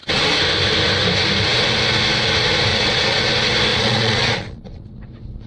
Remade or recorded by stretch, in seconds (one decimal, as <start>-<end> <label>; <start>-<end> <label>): 0.0-2.7 recorded; 2.7-3.2 remade; 3.2-3.7 recorded; 3.7-5.5 remade

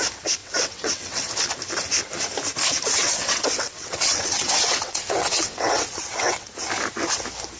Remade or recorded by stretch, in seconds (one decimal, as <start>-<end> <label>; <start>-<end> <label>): 0.0-0.4 recorded; 0.4-1.3 remade; 1.3-3.0 recorded; 3.0-6.5 remade; 6.5-7.6 recorded

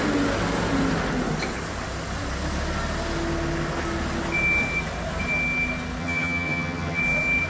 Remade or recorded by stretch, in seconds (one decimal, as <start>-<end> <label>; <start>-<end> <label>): 0.0-6.0 recorded; 6.0-7.0 remade; 7.0-7.5 recorded